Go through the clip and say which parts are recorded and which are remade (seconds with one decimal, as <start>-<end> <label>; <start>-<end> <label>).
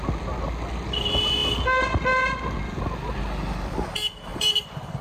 0.0-4.3 recorded; 4.3-5.0 remade